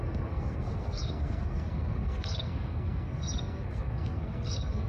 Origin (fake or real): fake